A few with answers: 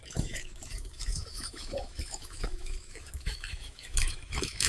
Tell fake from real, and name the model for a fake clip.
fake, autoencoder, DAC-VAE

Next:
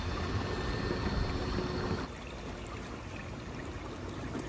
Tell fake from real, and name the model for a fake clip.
real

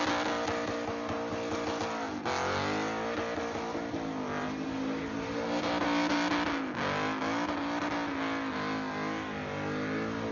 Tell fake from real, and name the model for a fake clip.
real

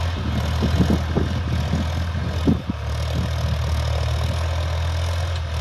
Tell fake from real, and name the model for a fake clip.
real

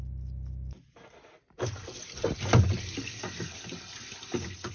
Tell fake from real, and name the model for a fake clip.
real